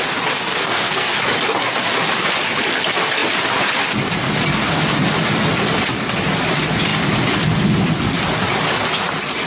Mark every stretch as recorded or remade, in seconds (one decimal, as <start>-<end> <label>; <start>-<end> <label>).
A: 0.0-0.5 recorded; 0.5-1.1 remade; 1.1-9.5 recorded